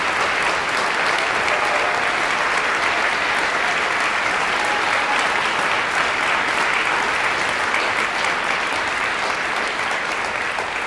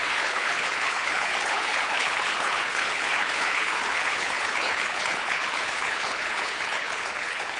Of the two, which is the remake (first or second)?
second